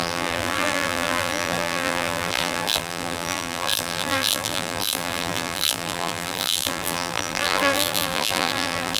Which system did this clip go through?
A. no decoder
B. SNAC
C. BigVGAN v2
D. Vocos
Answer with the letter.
C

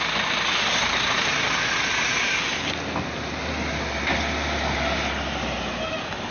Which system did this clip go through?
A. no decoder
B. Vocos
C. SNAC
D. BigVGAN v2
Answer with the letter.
A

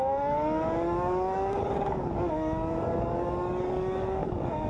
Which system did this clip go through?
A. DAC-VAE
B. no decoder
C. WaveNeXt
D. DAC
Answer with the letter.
D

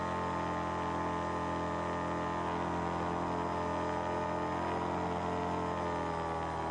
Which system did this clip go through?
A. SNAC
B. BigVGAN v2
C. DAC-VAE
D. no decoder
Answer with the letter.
D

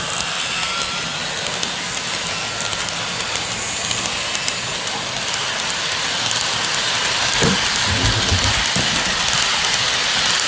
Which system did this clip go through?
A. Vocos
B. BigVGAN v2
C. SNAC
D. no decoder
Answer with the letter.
D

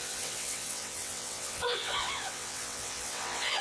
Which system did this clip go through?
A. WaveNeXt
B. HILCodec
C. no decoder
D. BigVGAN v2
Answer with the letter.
A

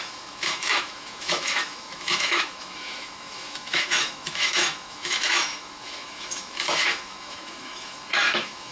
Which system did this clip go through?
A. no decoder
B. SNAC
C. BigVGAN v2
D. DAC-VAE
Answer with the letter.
D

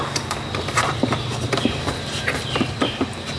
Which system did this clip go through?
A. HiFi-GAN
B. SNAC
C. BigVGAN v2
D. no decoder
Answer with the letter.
C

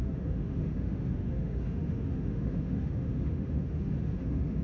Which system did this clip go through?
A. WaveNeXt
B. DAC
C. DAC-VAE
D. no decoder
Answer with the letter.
C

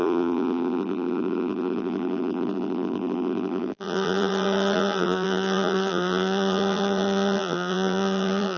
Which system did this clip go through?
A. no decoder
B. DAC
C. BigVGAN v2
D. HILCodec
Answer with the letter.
C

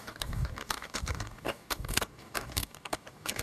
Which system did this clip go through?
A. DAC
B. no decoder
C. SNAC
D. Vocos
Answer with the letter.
A